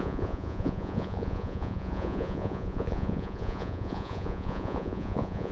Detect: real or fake fake